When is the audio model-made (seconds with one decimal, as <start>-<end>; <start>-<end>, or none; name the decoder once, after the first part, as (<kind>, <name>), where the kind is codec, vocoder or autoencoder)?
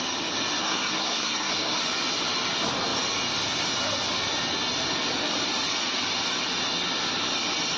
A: 0.6-1.8 (codec, SNAC)